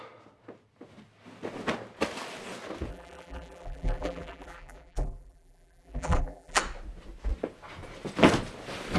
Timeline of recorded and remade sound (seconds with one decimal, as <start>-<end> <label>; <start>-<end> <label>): 0.0-2.9 recorded; 2.9-6.6 remade; 6.6-9.0 recorded